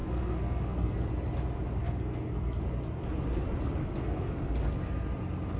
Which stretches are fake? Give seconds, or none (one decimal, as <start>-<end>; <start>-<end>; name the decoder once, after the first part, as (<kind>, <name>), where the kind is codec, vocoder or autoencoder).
0.0-1.1 (codec, SNAC); 1.8-2.6; 3.8-4.6